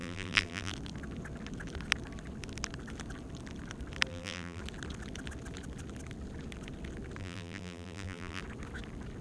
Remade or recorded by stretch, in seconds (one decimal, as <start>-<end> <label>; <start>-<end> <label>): 0.0-0.7 remade; 0.7-4.1 recorded; 4.1-4.6 remade; 4.6-7.2 recorded; 7.2-8.4 remade; 8.4-9.2 recorded